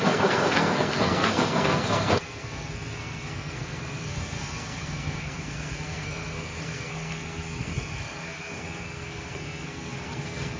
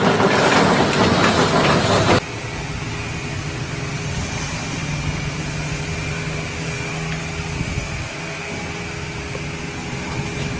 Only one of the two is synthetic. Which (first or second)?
first